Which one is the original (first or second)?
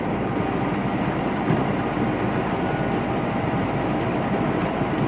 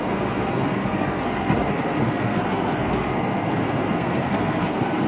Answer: first